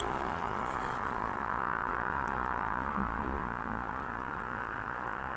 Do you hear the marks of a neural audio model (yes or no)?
yes